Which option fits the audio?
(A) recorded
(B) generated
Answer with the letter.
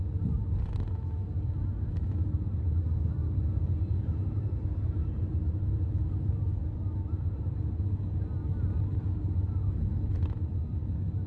A